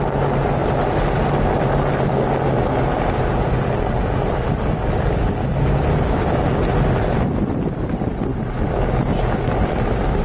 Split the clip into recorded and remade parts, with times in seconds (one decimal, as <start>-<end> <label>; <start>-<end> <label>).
0.0-10.2 recorded